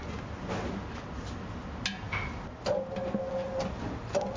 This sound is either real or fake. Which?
real